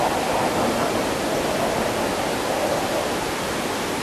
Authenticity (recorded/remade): recorded